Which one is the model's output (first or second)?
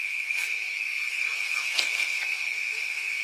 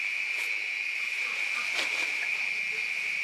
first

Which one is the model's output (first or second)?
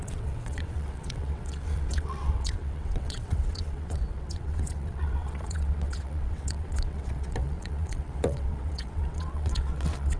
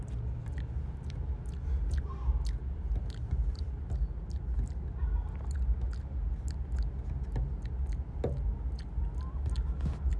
first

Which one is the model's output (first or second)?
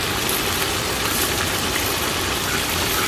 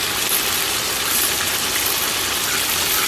first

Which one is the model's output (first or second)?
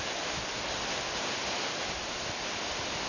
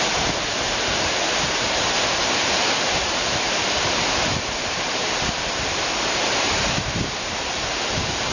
second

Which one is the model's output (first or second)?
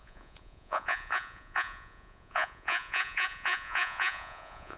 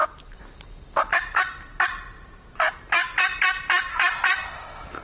first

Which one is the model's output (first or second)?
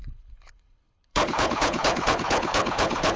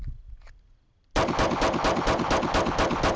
first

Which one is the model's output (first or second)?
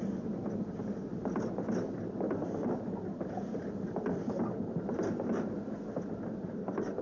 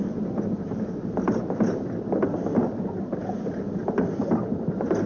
second